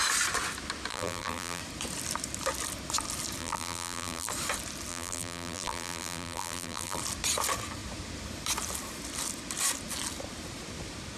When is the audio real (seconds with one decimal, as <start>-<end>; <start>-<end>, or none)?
0.0-0.9; 1.6-3.4; 4.3-4.9; 7.0-11.2